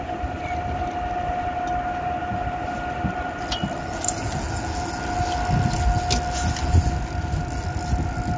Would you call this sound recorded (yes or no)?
yes